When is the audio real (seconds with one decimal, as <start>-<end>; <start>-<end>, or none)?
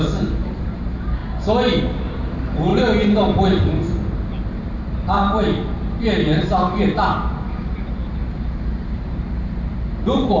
1.2-1.8; 8.2-8.9